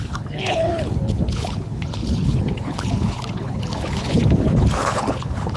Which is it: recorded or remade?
remade